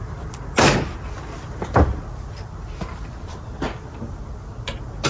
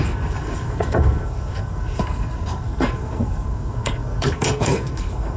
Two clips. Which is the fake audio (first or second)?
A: second